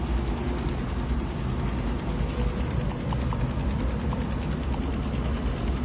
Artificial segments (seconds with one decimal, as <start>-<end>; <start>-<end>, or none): none

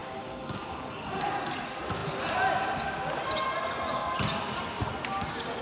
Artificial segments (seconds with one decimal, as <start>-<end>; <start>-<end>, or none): 0.0-1.3

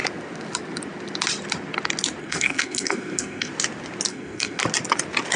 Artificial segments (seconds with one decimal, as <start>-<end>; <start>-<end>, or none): 2.2-3.5; 4.1-4.6

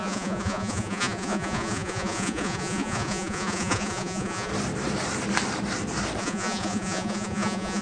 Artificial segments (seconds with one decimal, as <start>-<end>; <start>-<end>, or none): 0.0-4.5; 6.2-7.8

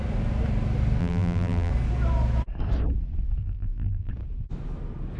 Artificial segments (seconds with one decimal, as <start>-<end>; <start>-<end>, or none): 1.0-1.7; 3.4-4.1

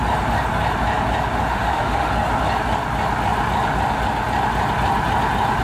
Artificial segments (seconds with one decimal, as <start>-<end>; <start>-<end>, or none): 1.5-2.1

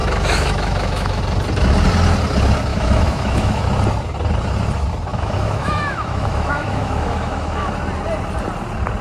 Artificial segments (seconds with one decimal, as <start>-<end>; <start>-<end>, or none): 0.0-1.2; 2.7-3.6; 5.1-7.7